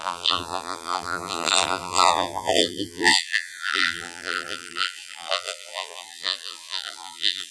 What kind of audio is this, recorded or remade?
remade